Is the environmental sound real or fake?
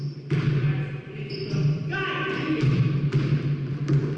real